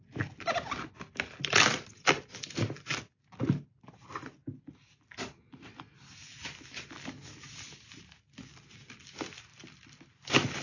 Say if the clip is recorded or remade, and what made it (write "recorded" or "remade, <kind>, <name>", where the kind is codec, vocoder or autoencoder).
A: recorded